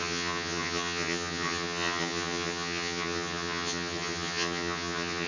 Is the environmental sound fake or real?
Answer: fake